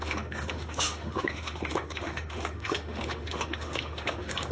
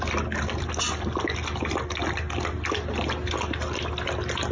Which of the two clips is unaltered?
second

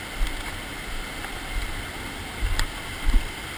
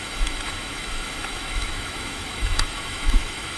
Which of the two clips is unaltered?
first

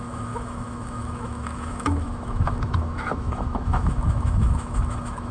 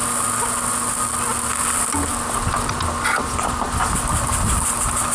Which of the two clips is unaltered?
second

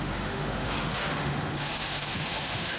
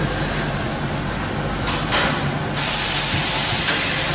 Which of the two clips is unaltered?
second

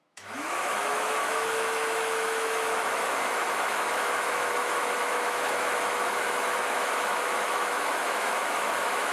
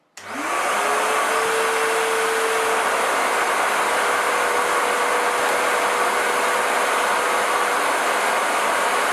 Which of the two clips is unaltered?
second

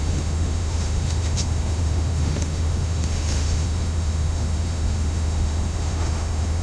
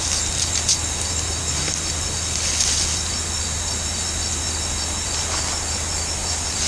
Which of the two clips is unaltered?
second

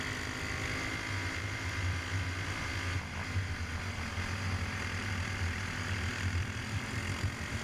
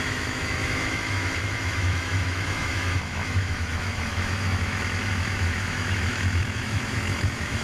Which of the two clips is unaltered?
first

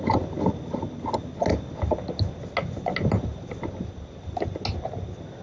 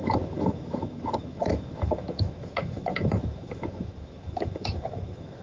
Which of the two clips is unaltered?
first